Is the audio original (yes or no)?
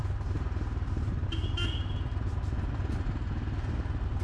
yes